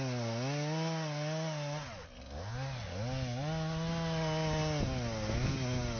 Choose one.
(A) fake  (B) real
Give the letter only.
B